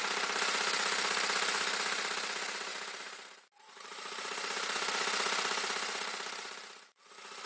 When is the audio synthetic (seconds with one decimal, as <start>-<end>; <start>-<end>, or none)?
2.7-7.1